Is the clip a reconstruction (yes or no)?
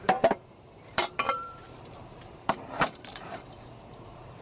yes